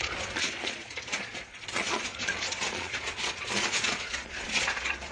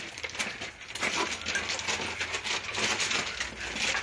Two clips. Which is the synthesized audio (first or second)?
first